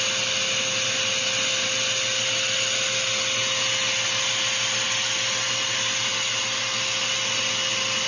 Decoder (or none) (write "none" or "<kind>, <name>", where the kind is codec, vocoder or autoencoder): none